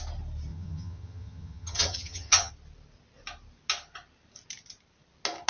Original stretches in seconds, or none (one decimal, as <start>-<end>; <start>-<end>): 0.0-0.5; 2.5-5.5